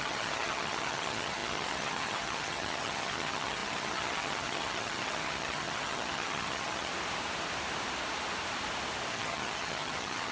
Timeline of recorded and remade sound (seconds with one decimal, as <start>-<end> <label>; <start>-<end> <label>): 0.0-6.9 remade; 6.9-9.1 recorded; 9.1-10.3 remade